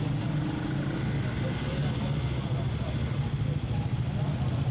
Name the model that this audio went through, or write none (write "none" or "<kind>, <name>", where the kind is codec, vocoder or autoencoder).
none